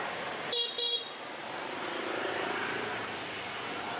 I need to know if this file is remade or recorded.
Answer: recorded